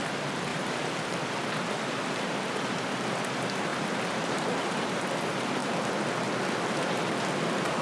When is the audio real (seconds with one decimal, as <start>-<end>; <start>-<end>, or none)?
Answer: 0.0-0.5; 1.3-3.7; 5.0-7.8